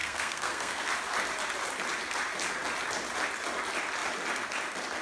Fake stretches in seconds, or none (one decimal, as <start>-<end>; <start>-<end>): 0.0-0.8